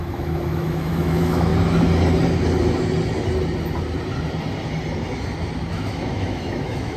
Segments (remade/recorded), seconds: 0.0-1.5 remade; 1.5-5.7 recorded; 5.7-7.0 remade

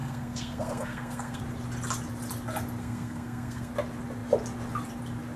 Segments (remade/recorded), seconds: 0.0-1.4 remade; 1.4-2.8 recorded; 2.8-3.7 remade; 3.7-5.4 recorded

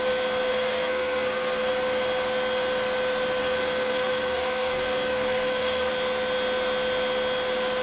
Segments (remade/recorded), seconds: 0.0-0.5 recorded; 0.5-1.7 remade; 1.7-3.4 recorded; 3.4-5.9 remade; 5.9-7.8 recorded